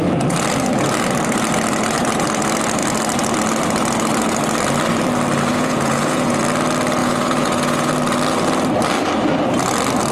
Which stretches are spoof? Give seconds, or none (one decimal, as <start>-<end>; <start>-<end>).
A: 5.5-6.4; 7.0-7.9